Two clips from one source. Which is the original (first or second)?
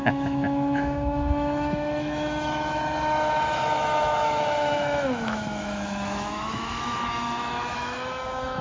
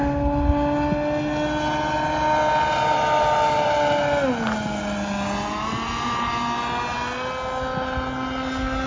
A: second